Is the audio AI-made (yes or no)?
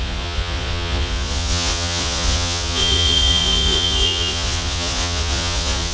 yes